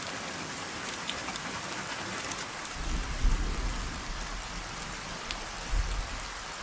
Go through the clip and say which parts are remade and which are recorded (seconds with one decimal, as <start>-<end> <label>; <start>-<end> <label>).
0.0-6.6 recorded